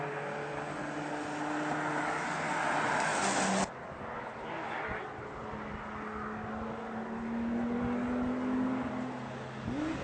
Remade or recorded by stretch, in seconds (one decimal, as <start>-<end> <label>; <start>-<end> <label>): 0.0-10.0 recorded